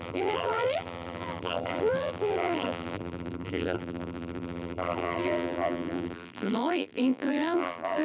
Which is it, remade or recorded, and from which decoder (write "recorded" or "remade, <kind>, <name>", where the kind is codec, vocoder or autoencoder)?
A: remade, vocoder, BigVGAN v2